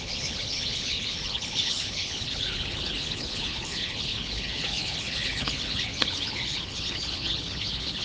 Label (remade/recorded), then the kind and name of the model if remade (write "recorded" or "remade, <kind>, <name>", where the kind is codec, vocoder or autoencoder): remade, codec, HILCodec